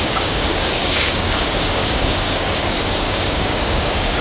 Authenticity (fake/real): fake